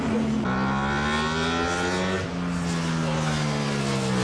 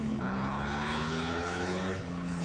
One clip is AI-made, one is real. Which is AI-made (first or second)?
second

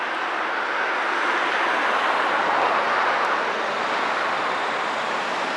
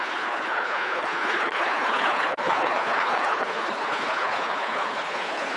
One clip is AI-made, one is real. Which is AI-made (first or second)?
second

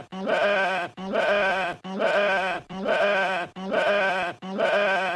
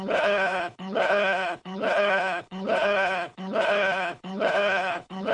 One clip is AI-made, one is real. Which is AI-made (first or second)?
second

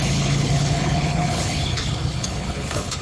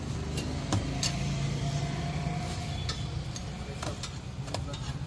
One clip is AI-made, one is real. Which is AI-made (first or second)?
first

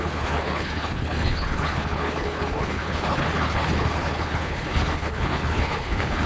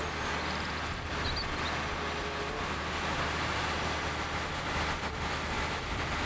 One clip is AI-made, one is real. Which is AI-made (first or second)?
first